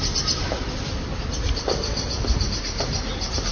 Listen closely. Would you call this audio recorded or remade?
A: recorded